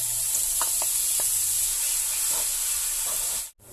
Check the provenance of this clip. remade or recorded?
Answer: recorded